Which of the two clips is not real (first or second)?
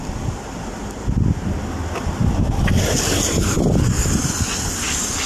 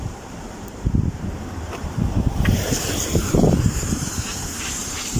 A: second